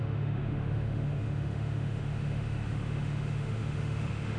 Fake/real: fake